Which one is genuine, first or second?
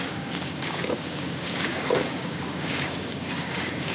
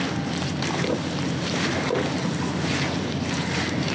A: second